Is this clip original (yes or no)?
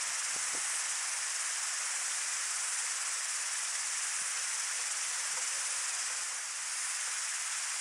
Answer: yes